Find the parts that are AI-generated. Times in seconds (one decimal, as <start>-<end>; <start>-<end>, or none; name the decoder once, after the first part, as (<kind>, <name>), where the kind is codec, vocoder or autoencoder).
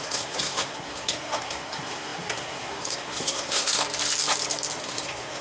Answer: 0.0-3.8 (codec, SNAC); 4.8-5.4